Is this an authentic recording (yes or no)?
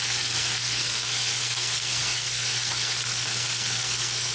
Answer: no